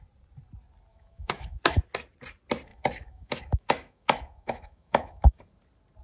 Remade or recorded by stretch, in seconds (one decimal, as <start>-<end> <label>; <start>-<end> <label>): 0.0-0.9 recorded; 0.9-1.8 remade; 1.8-2.7 recorded; 2.7-5.4 remade; 5.4-6.0 recorded

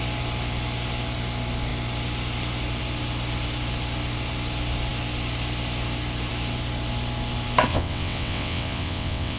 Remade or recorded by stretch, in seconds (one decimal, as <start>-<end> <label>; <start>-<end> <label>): 0.0-7.7 recorded; 7.7-9.4 remade

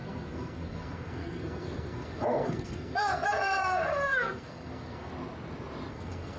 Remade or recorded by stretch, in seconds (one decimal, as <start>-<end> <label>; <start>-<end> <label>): 0.0-5.1 remade; 5.1-5.9 recorded; 5.9-6.4 remade

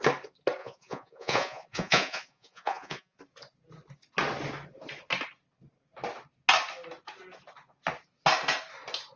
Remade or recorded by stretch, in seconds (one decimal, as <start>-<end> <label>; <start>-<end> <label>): 0.0-0.6 recorded; 0.6-3.2 remade; 3.2-9.2 recorded